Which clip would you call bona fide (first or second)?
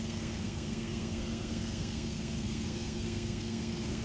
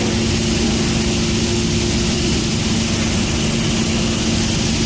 second